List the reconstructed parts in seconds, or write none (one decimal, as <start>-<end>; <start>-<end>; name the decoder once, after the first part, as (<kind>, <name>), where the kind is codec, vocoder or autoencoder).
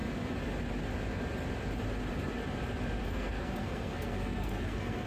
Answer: 3.0-5.1 (codec, SNAC)